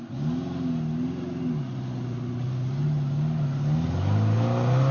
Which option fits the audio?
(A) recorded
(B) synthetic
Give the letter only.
A